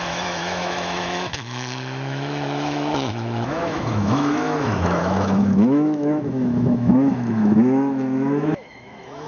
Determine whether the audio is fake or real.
fake